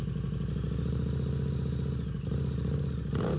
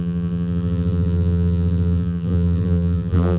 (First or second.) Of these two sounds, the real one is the first